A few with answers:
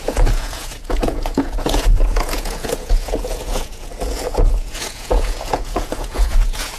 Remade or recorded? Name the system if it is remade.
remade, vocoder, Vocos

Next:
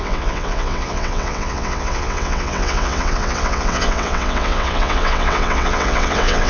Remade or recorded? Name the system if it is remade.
remade, vocoder, WaveNeXt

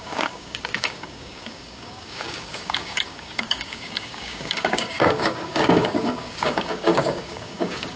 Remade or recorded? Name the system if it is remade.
remade, codec, DAC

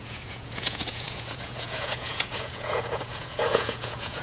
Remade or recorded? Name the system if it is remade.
remade, vocoder, Vocos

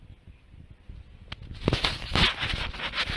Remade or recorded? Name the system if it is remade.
recorded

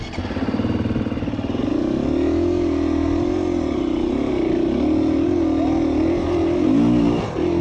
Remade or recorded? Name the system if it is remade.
recorded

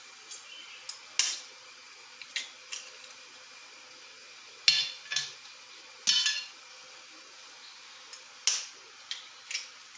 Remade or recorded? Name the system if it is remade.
recorded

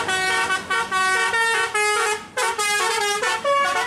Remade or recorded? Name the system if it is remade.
recorded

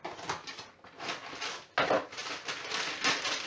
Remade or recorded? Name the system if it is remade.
recorded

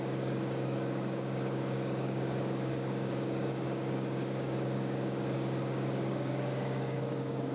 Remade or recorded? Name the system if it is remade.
remade, codec, DAC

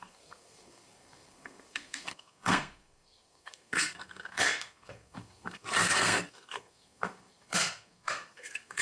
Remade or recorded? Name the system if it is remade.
remade, codec, SNAC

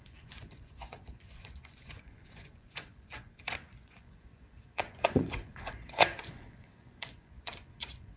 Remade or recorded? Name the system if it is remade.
remade, vocoder, Vocos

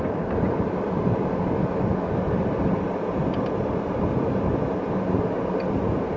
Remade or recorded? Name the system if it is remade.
recorded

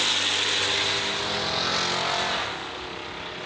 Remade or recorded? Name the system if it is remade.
recorded